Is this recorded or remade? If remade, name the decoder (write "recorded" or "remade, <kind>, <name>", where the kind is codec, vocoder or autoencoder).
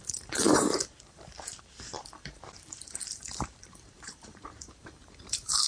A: remade, vocoder, BigVGAN v2